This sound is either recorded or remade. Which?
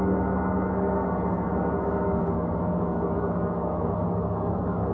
remade